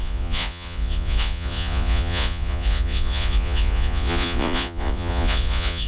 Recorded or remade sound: remade